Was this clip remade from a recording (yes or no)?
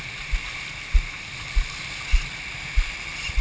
no